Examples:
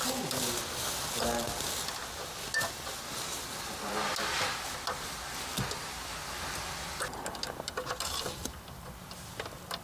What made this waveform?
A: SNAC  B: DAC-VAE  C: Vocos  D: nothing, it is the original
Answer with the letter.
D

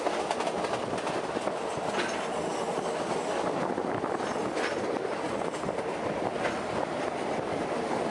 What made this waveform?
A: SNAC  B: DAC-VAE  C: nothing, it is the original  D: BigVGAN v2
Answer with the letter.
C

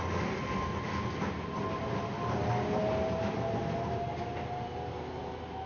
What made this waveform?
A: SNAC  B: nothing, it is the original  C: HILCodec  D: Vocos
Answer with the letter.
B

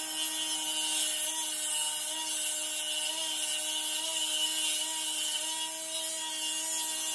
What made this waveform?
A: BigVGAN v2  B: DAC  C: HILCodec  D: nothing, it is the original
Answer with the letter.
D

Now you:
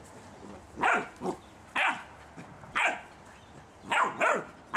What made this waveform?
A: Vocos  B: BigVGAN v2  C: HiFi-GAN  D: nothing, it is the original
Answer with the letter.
D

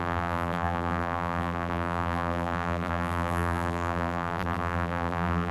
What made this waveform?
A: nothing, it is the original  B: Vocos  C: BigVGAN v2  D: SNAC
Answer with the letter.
C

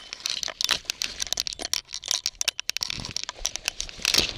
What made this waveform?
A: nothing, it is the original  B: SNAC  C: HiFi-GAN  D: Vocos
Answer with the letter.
A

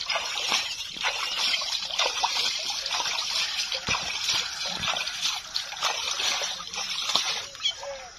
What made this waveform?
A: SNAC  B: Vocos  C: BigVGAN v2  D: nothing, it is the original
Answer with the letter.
C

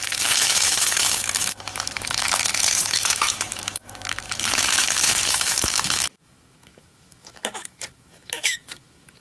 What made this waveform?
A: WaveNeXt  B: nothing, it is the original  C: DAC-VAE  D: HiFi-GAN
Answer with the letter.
C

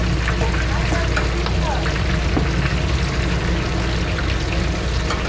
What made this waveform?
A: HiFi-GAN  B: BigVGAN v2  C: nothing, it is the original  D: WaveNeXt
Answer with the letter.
C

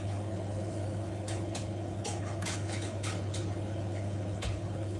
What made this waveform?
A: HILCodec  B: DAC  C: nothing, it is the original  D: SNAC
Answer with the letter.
A